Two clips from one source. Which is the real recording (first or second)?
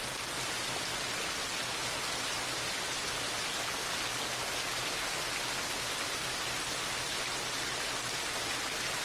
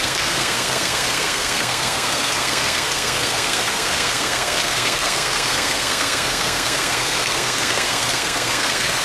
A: first